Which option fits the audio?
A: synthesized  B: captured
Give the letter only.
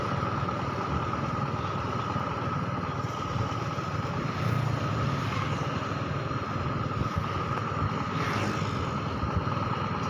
B